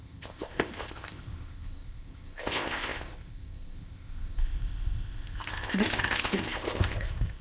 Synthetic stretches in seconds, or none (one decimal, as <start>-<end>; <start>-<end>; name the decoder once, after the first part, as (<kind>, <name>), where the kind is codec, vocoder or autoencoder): 0.0-7.4 (codec, ZipCodec)